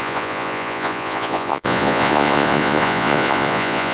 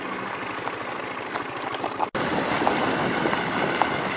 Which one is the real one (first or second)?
second